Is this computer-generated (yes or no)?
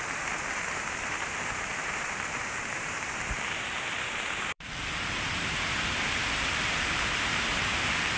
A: yes